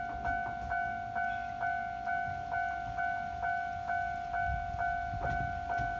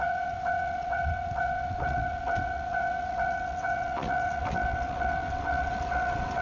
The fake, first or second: second